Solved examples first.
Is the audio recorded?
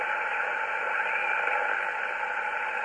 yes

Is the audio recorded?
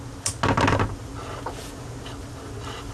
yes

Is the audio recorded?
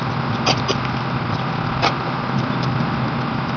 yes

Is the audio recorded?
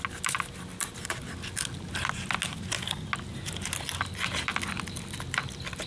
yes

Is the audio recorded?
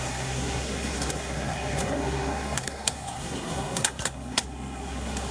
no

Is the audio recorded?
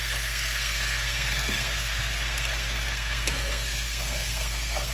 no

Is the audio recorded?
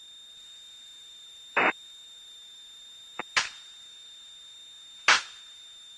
yes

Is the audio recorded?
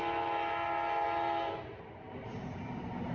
yes